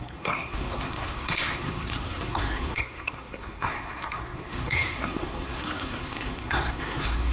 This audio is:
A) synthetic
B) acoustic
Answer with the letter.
A